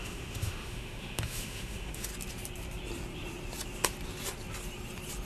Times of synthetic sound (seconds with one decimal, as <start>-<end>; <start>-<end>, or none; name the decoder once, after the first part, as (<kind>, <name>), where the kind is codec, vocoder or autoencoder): 0.0-2.1 (autoencoder, DAC-VAE)